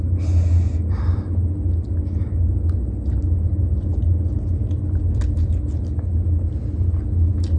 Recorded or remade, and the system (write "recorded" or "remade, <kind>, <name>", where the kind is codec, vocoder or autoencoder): recorded